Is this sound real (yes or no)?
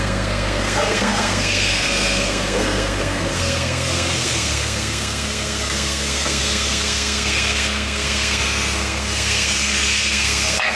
no